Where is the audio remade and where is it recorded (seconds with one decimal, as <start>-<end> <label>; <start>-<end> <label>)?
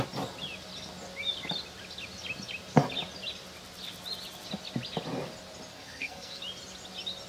0.0-5.7 recorded; 5.7-6.4 remade; 6.4-7.3 recorded